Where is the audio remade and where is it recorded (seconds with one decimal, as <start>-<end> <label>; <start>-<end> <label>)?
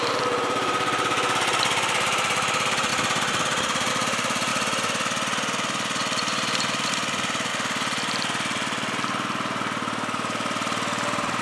0.0-2.9 remade; 2.9-3.9 recorded; 3.9-4.5 remade; 4.5-6.9 recorded; 6.9-7.5 remade; 7.5-11.4 recorded